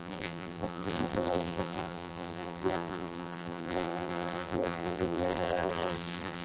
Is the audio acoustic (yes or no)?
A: no